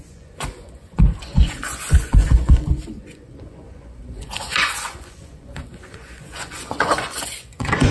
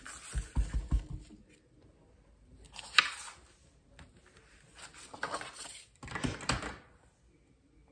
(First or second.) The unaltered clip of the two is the second